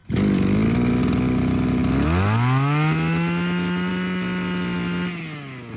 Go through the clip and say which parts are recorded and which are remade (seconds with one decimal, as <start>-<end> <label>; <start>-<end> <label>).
0.0-5.8 recorded